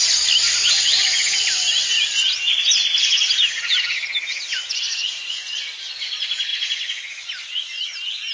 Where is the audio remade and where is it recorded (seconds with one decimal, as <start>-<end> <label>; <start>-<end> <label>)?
0.0-4.6 recorded; 4.6-5.6 remade; 5.6-8.3 recorded